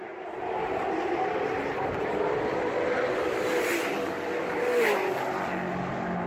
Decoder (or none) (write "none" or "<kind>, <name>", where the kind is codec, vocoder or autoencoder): none